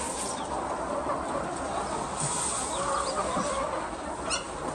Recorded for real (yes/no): yes